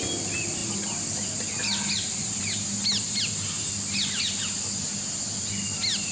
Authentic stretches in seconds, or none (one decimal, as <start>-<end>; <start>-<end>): 0.0-6.1